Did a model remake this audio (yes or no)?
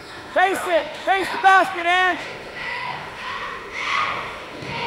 yes